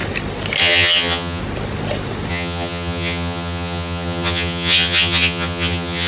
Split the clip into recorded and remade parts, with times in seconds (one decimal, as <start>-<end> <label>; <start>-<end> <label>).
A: 0.0-0.6 recorded; 0.6-1.4 remade; 1.4-2.3 recorded; 2.3-6.1 remade